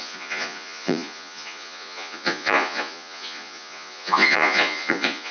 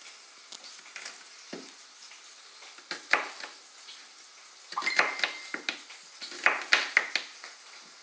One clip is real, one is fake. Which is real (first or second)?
second